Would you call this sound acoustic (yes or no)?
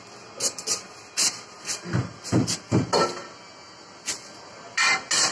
yes